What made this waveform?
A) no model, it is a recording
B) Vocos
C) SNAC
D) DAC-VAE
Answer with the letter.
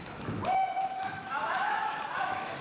D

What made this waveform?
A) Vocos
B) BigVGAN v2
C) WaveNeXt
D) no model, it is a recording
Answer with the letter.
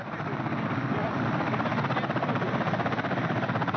D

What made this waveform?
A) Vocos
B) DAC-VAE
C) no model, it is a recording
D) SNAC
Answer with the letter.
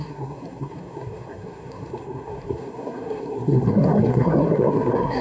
D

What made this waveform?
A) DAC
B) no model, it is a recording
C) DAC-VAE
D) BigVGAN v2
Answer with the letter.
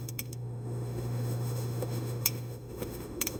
C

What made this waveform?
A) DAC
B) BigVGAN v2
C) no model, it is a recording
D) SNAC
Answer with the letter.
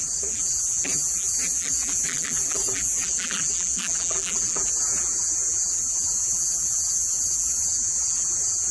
B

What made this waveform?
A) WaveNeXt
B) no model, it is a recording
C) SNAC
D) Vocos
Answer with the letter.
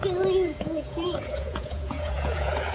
D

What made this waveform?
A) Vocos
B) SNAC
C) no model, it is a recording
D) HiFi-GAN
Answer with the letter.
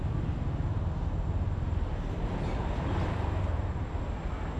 C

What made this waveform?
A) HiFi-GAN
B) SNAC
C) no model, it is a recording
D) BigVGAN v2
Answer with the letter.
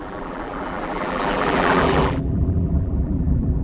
D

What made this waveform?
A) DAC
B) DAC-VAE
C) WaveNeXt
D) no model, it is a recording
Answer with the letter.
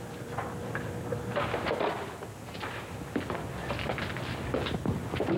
D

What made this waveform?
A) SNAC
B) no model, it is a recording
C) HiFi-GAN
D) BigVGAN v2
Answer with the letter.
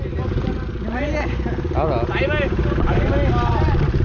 B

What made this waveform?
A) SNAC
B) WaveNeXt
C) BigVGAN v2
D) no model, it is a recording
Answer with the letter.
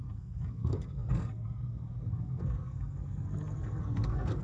A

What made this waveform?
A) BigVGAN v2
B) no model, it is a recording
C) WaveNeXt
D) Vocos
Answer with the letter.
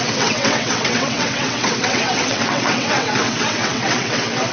C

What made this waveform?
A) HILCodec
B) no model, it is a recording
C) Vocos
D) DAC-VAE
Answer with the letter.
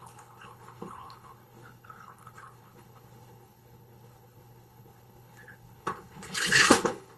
A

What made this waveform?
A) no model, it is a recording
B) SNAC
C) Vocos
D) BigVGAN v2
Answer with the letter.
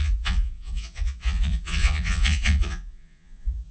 C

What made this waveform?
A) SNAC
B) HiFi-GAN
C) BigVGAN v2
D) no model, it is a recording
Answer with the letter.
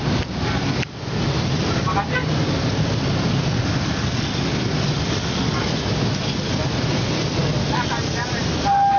D